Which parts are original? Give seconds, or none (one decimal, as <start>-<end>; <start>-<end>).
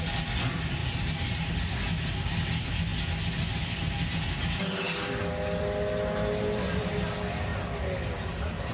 0.0-0.8; 1.5-8.7